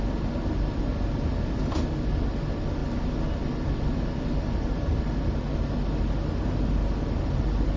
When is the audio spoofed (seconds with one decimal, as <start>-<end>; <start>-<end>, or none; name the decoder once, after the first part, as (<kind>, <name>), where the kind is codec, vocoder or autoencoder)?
none